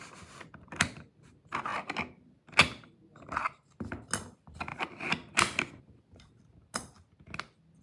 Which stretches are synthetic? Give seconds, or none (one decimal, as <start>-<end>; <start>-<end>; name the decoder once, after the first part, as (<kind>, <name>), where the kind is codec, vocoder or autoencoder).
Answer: none